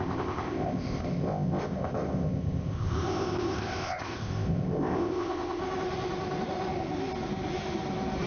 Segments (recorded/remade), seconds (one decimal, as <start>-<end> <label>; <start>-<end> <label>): 0.0-5.6 remade; 5.6-8.3 recorded